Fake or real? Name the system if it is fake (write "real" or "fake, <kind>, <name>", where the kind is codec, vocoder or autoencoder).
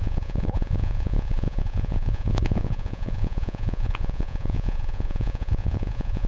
fake, vocoder, Vocos